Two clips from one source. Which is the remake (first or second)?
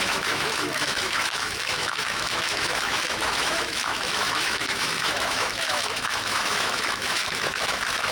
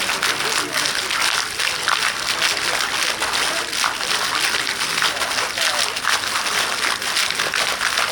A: first